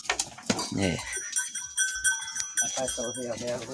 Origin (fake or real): real